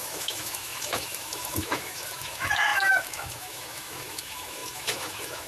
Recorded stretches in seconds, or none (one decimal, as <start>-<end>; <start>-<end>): none